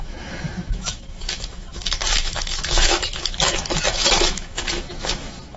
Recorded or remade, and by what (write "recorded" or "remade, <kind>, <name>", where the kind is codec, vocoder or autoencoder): remade, autoencoder, DAC-VAE